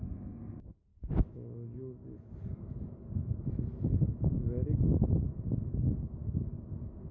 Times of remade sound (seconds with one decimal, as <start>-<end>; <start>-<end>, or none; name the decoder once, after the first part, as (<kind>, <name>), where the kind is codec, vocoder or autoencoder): 0.9-5.1 (autoencoder, DAC-VAE)